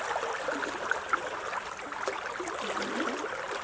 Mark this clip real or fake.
real